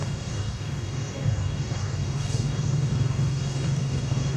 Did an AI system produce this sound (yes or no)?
yes